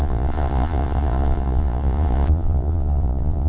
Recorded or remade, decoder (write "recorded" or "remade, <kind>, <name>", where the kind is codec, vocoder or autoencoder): remade, vocoder, Vocos